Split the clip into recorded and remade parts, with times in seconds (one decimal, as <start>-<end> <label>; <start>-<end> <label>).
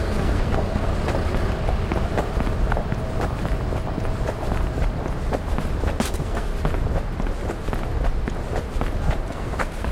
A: 0.0-0.9 remade; 0.9-6.1 recorded; 6.1-6.5 remade; 6.5-9.3 recorded; 9.3-9.9 remade